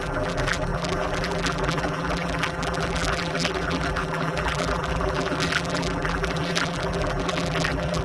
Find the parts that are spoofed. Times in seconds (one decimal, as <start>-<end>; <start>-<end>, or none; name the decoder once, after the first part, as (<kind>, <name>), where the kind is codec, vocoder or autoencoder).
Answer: 0.0-8.0 (vocoder, BigVGAN v2)